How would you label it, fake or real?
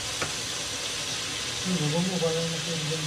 real